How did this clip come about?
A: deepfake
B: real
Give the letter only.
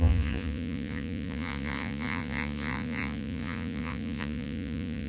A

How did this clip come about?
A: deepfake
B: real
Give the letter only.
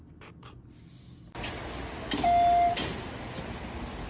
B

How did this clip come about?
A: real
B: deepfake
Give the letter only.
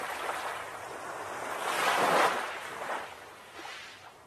A